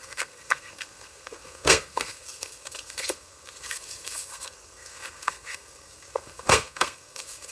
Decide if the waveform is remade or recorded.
remade